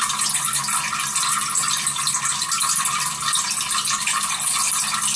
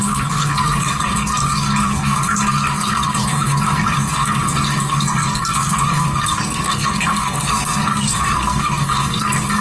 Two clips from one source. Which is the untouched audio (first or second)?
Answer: first